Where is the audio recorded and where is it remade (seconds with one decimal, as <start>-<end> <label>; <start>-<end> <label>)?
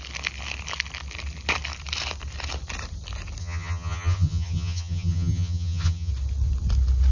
0.0-3.4 recorded; 3.4-6.1 remade; 6.1-7.1 recorded